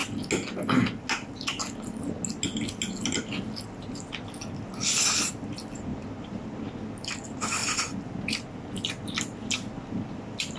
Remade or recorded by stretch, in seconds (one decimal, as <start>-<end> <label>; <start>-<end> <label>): 0.0-5.9 recorded; 5.9-6.6 remade; 6.6-10.6 recorded